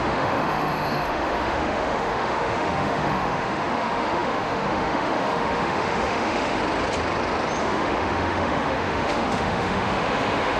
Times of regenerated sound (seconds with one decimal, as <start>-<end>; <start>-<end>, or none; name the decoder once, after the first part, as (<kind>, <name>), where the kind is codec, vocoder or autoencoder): 0.0-6.6 (autoencoder, DAC-VAE); 7.6-10.6